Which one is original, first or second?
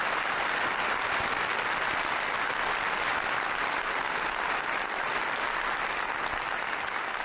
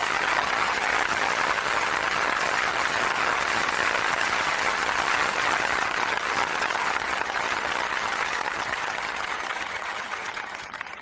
first